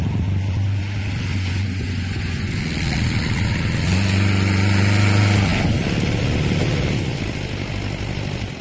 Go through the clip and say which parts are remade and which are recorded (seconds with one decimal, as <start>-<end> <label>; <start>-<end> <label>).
0.0-1.3 recorded; 1.3-2.6 remade; 2.6-8.6 recorded